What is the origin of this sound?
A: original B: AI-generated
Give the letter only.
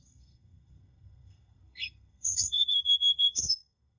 B